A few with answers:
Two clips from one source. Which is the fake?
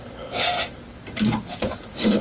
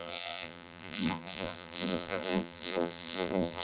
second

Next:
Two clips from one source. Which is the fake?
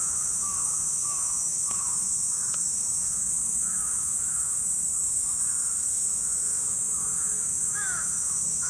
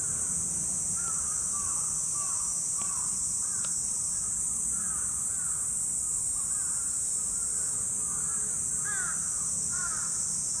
first